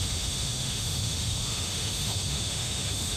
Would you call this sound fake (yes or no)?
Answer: yes